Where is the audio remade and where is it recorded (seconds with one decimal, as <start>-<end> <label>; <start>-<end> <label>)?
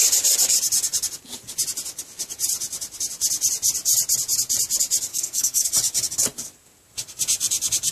0.0-5.1 recorded; 5.1-5.7 remade; 5.7-7.9 recorded